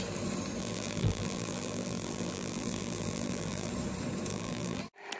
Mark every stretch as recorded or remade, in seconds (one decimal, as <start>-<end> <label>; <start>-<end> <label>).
0.0-0.6 recorded; 0.6-3.7 remade; 3.7-4.3 recorded; 4.3-4.8 remade; 4.8-5.2 recorded